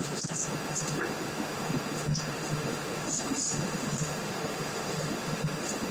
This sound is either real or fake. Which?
fake